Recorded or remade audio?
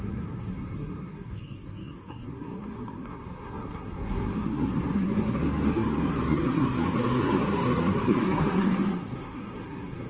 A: remade